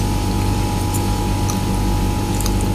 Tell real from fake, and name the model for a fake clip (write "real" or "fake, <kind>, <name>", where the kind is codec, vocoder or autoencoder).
real